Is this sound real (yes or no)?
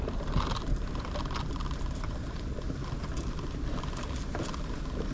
yes